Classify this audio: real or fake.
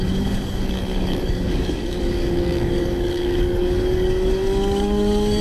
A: fake